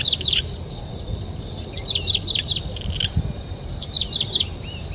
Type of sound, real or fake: real